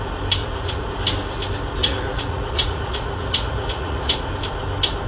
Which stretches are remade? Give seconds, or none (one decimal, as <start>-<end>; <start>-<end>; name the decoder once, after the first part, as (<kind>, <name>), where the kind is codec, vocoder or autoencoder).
0.4-0.9 (vocoder, Vocos); 1.8-4.3